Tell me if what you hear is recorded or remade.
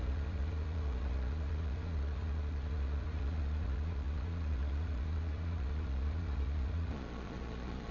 remade